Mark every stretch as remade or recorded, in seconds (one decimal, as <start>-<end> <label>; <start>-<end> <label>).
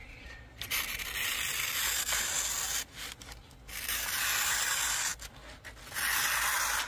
0.0-6.9 recorded